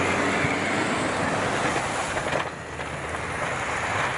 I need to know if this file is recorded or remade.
recorded